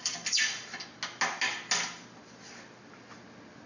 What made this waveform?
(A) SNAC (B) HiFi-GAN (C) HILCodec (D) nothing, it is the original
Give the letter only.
D